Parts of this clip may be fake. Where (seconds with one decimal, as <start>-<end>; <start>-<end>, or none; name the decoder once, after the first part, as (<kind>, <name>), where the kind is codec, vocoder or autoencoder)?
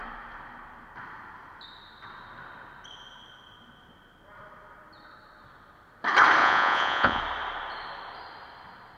6.4-7.2 (vocoder, Vocos)